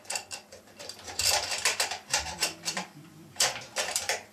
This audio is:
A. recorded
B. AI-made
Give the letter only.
B